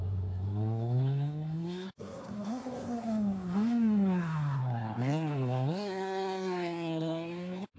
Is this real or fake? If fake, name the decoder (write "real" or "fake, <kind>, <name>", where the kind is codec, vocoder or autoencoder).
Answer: fake, codec, SNAC